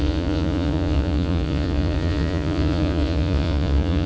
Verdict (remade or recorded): remade